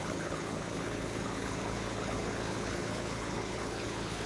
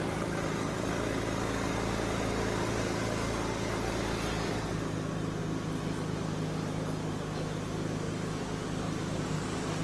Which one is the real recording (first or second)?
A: second